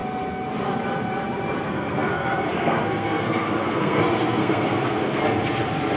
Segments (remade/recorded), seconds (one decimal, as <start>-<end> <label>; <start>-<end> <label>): 0.0-1.6 recorded; 1.6-5.2 remade; 5.2-6.0 recorded